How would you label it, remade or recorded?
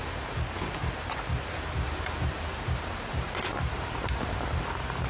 remade